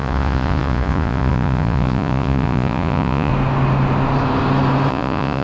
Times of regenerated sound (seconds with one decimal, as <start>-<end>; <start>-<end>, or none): 0.0-3.3; 4.9-5.4